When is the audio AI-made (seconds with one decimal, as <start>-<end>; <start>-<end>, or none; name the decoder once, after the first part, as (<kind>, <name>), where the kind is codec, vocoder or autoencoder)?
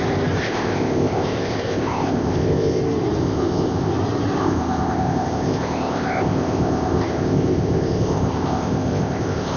0.4-2.8 (codec, ZipCodec); 3.2-3.9; 4.4-9.6